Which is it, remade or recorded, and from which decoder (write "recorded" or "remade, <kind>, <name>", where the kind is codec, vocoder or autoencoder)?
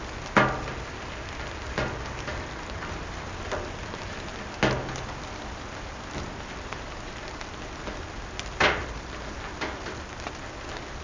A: recorded